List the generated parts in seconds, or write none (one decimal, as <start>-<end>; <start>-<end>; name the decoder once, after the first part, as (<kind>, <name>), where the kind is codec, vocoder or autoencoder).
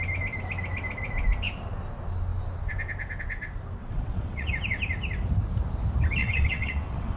3.8-4.5 (vocoder, WaveNeXt); 6.2-7.2